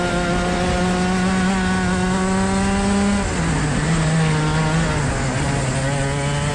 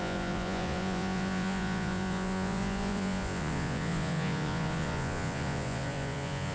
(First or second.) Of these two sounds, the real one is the first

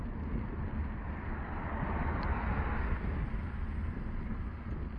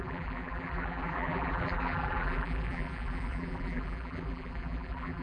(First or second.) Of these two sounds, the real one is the first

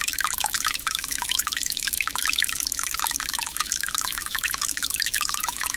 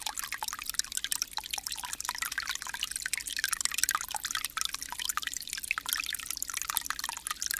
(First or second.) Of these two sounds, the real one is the second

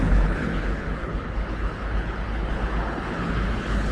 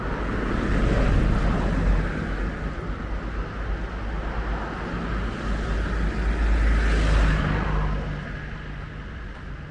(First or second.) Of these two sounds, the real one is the second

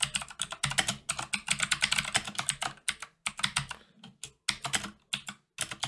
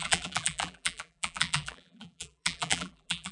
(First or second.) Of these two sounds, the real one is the first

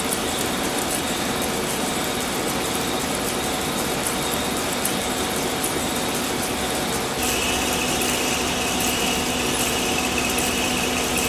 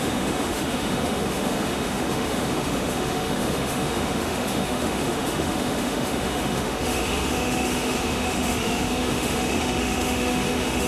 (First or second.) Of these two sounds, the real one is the first